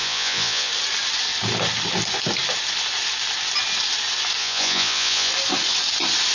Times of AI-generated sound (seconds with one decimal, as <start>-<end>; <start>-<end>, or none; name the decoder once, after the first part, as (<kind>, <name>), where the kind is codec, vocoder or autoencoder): 0.0-0.7 (vocoder, Vocos); 4.4-5.3